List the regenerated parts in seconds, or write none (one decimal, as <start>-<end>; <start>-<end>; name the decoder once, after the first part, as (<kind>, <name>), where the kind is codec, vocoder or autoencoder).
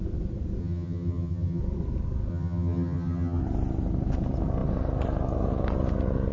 0.6-1.6 (vocoder, HiFi-GAN); 2.3-3.4